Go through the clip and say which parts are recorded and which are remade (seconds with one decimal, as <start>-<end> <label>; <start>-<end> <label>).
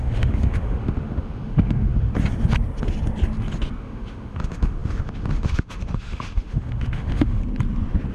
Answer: 0.0-2.1 remade; 2.1-3.8 recorded; 3.8-7.4 remade; 7.4-8.1 recorded